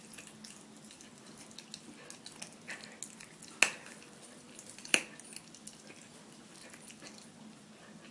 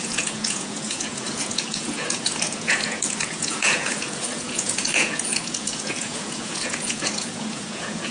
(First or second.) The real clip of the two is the first